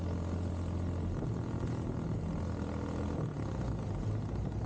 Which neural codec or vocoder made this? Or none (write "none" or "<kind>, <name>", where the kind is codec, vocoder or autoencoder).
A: none